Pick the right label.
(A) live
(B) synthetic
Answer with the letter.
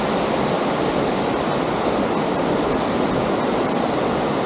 A